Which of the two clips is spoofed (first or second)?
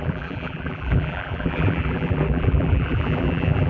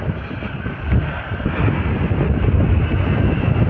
first